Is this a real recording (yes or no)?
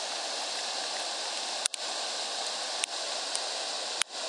yes